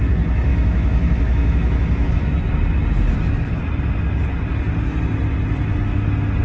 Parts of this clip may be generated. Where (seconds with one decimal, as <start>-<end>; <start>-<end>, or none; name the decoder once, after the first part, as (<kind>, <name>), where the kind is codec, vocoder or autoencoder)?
0.5-2.4 (autoencoder, DAC-VAE)